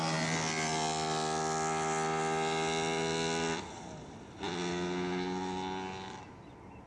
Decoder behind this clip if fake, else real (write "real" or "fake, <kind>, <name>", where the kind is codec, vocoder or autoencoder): real